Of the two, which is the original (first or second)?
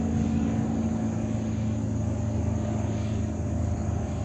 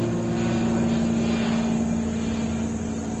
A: second